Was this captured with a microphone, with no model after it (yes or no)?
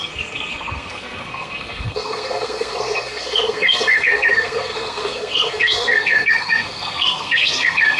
no